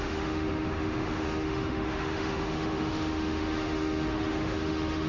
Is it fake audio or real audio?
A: fake